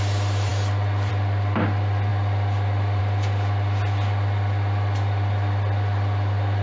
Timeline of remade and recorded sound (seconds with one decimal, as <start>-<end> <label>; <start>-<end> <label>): 0.0-6.6 recorded